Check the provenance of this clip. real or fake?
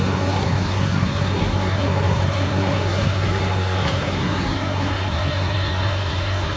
fake